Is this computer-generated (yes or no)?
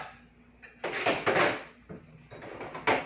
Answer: no